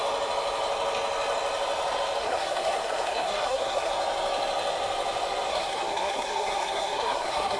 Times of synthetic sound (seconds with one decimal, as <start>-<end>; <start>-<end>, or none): 2.2-3.9; 5.5-7.6